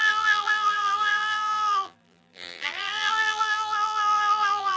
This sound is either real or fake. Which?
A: fake